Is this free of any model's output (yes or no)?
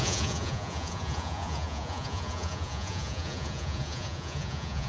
no